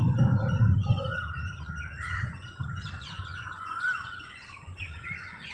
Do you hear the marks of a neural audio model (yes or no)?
yes